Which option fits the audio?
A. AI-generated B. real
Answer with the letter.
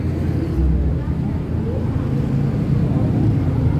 B